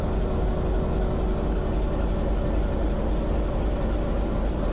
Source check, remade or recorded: recorded